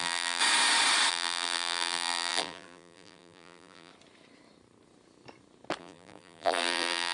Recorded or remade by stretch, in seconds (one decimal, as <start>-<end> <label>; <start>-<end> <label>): 0.0-0.4 remade; 0.4-1.1 recorded; 1.1-3.9 remade; 3.9-5.8 recorded; 5.8-7.1 remade